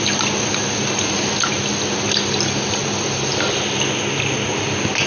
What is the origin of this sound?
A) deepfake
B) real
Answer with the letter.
B